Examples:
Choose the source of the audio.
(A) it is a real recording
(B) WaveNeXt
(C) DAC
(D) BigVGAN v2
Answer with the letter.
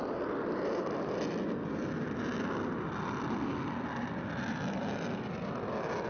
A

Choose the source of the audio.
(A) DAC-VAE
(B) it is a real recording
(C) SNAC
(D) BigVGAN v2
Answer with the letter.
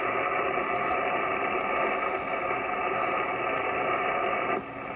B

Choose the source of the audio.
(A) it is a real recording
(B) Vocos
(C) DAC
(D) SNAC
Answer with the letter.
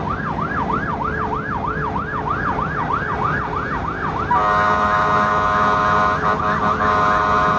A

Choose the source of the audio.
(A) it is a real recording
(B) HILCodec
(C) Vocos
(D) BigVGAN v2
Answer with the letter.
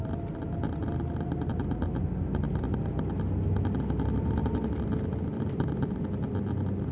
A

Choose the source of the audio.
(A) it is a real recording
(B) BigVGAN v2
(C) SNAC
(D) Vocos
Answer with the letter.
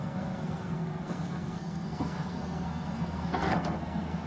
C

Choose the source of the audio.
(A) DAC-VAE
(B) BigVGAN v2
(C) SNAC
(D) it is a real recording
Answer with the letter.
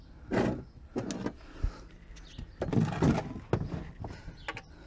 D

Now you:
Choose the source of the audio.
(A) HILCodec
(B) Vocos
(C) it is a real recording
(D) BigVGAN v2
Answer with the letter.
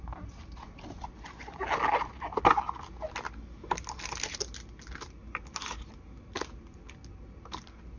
C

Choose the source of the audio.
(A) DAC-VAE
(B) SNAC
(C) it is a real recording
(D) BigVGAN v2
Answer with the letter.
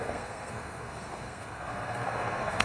B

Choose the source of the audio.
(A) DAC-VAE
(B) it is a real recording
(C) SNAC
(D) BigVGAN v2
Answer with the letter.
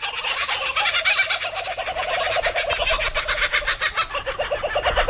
B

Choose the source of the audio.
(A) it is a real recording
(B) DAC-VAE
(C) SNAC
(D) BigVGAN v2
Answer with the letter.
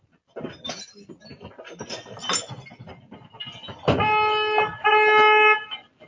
A